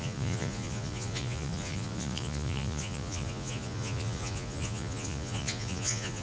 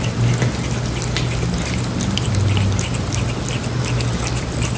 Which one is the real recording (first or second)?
second